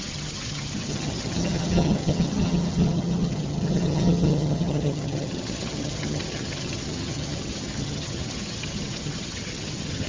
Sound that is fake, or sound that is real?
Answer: fake